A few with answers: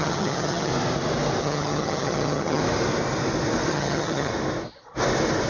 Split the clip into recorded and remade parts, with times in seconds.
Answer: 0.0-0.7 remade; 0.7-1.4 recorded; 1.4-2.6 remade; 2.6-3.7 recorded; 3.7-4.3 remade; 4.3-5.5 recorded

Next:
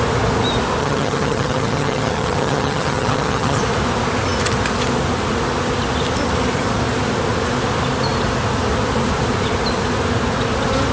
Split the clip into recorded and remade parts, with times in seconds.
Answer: 0.0-0.8 recorded; 0.8-3.6 remade; 3.6-10.9 recorded

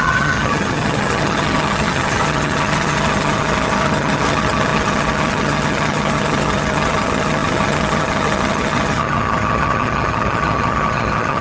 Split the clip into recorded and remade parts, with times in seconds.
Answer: 0.0-11.4 remade

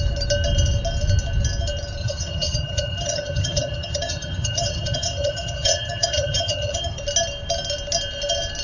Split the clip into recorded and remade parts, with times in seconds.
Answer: 0.0-2.0 recorded; 2.0-7.0 remade; 7.0-8.6 recorded

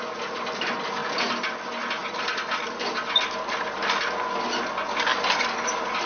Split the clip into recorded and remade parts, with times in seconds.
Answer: 0.0-6.1 recorded

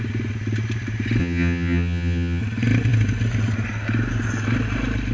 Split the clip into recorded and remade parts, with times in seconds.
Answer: 0.0-1.2 recorded; 1.2-2.4 remade; 2.4-5.1 recorded

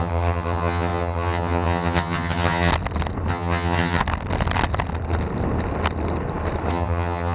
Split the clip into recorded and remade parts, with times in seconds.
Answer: 0.0-2.7 remade; 2.7-3.3 recorded; 3.3-4.0 remade; 4.0-6.7 recorded; 6.7-7.3 remade

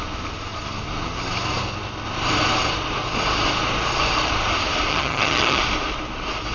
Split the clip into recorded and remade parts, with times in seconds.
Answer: 0.0-4.9 recorded; 4.9-5.6 remade; 5.6-6.5 recorded